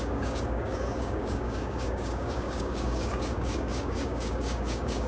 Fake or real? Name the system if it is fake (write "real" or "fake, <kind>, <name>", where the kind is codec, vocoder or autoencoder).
fake, codec, DAC